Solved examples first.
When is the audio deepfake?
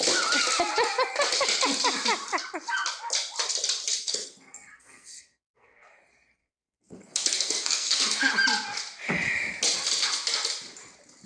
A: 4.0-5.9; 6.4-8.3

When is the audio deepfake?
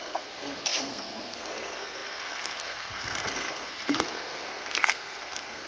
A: 0.0-5.7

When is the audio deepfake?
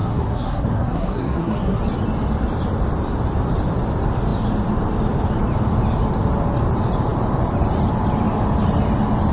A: 0.0-1.8